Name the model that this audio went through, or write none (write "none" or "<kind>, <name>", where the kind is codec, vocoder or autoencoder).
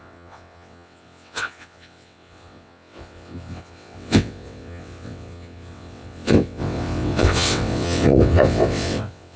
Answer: vocoder, WaveNeXt